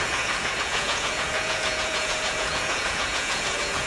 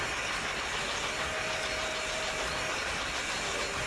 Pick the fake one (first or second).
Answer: first